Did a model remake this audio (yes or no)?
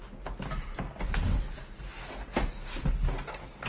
no